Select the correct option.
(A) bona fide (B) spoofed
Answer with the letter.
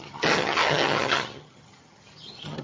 B